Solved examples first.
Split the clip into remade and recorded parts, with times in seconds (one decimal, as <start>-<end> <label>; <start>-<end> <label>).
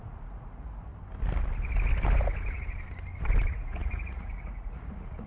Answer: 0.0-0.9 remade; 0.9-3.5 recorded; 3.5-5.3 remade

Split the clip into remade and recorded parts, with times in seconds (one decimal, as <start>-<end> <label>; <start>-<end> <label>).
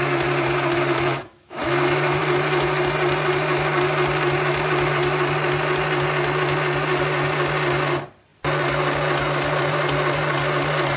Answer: 0.0-1.1 recorded; 1.1-2.2 remade; 2.2-11.0 recorded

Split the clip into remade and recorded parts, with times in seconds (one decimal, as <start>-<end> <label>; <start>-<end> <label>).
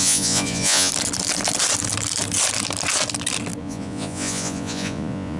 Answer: 0.0-0.9 remade; 0.9-3.6 recorded; 3.6-5.4 remade